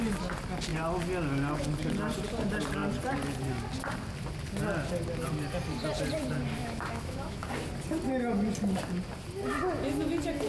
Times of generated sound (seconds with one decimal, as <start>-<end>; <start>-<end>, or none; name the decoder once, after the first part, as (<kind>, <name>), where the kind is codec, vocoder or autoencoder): 6.6-7.5 (autoencoder, DAC-VAE)